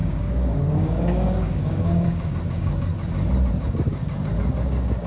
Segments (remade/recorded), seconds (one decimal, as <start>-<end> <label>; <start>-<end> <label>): 0.0-2.9 remade; 2.9-3.5 recorded; 3.5-5.1 remade